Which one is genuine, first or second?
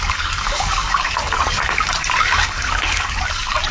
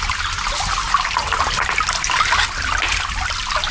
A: second